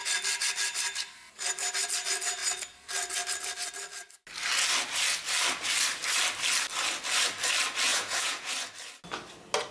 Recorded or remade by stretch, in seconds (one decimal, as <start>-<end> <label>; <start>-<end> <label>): 0.0-7.9 recorded; 7.9-8.5 remade; 8.5-9.7 recorded

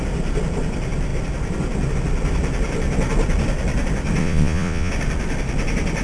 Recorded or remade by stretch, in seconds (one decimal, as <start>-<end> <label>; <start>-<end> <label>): 0.0-4.2 recorded; 4.2-4.9 remade; 4.9-6.0 recorded

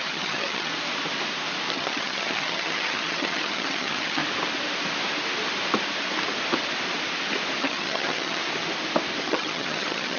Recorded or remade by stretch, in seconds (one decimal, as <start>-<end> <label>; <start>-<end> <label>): 0.0-0.7 remade; 0.7-1.7 recorded; 1.7-4.2 remade; 4.2-7.6 recorded; 7.6-8.4 remade; 8.4-9.2 recorded; 9.2-10.2 remade

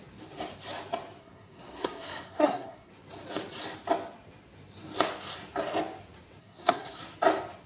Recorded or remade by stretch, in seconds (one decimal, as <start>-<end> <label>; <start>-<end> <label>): 0.0-1.2 recorded; 1.2-2.9 remade; 2.9-6.4 recorded; 6.4-7.0 remade; 7.0-7.7 recorded

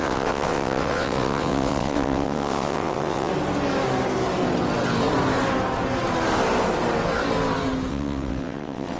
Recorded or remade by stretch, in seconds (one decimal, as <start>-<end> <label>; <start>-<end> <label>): 0.0-3.3 remade; 3.3-7.9 recorded; 7.9-9.0 remade